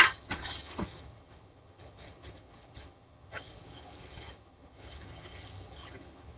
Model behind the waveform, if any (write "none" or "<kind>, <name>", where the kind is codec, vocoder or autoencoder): vocoder, HiFi-GAN